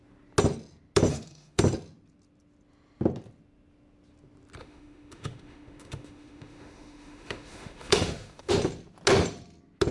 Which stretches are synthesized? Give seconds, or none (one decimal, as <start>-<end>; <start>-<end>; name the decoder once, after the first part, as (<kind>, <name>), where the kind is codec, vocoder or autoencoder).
1.1-1.6 (autoencoder, DAC-VAE); 4.6-8.5